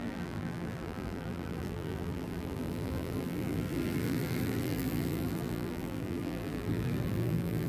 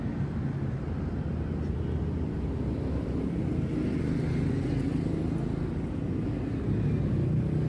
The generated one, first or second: first